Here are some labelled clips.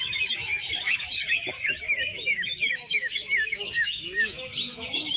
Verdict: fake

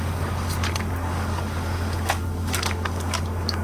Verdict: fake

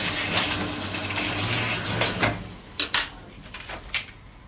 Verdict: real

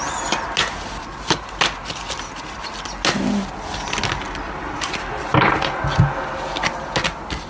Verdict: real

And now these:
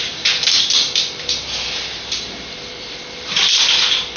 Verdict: fake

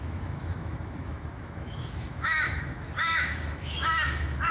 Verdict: fake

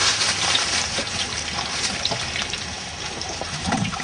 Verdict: fake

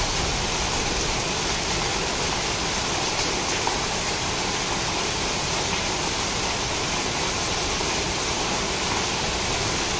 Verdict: real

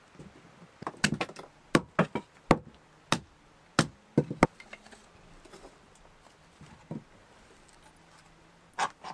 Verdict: real